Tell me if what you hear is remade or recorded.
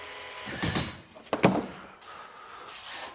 recorded